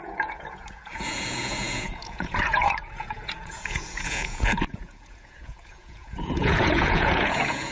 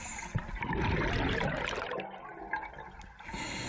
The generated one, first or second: first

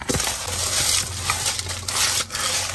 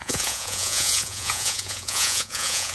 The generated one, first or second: second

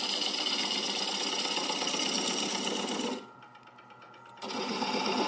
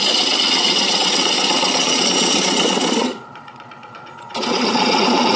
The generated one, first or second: second